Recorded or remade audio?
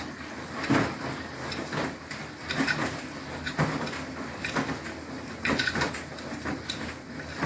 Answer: recorded